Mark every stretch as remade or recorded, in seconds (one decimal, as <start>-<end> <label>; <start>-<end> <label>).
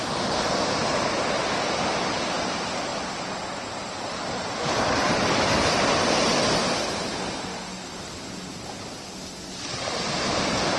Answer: 0.0-7.1 remade; 7.1-8.8 recorded; 8.8-10.8 remade